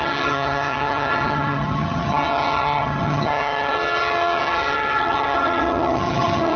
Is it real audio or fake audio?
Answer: fake